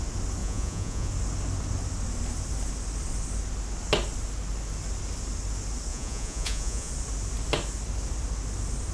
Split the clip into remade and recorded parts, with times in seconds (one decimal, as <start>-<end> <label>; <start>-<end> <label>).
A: 0.0-0.4 recorded; 0.4-1.1 remade; 1.1-5.9 recorded; 5.9-6.9 remade; 6.9-8.9 recorded